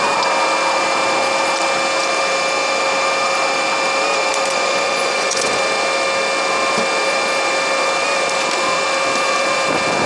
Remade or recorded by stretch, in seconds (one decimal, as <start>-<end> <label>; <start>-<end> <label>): 0.0-4.3 recorded; 4.3-5.6 remade; 5.6-10.1 recorded